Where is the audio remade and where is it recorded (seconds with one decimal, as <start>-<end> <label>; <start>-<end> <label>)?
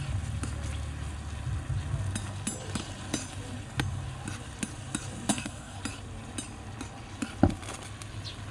0.0-5.3 recorded; 5.3-5.8 remade; 5.8-8.5 recorded